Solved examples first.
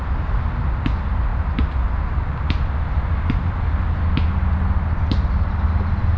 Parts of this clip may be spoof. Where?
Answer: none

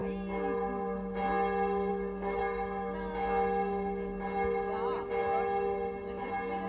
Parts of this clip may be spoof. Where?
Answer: 1.9-2.4 (codec, DAC)

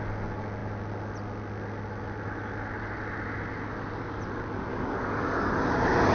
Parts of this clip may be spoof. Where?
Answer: 4.7-5.5 (codec, DAC)

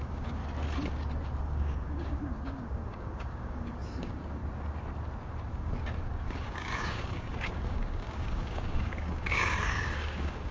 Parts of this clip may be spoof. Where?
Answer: 0.0-0.4 (codec, DAC); 1.4-4.4; 5.5-10.5

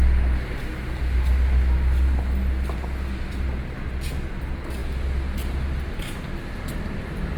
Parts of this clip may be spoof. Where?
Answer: none

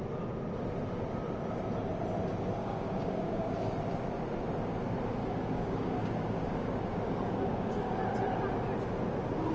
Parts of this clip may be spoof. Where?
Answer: 2.6-3.7 (codec, DAC); 5.2-8.0